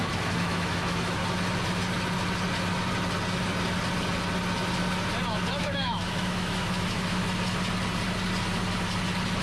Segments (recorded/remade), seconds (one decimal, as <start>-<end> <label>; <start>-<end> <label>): 0.0-1.2 remade; 1.2-5.5 recorded; 5.5-7.2 remade; 7.2-9.4 recorded